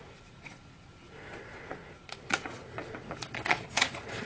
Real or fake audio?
fake